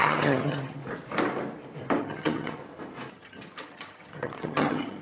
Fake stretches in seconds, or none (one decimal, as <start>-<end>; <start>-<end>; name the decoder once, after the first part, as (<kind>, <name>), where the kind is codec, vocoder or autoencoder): 0.0-0.8 (vocoder, HiFi-GAN); 2.0-2.6; 3.1-5.0